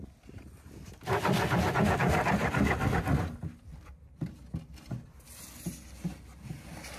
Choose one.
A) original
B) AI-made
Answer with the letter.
A